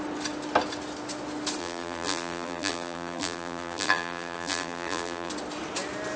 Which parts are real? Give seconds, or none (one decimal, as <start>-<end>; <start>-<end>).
0.0-1.6; 5.3-6.2